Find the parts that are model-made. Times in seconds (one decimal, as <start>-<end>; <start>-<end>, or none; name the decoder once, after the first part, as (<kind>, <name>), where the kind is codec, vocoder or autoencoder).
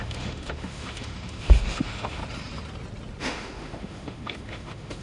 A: 0.0-2.2 (autoencoder, DAC-VAE); 3.2-5.0